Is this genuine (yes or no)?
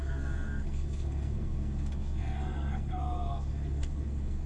no